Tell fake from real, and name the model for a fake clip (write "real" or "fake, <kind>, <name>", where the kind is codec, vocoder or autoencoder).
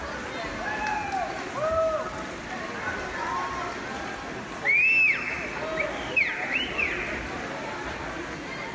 real